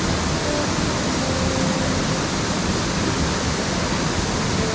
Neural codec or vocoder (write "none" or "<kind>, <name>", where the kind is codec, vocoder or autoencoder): none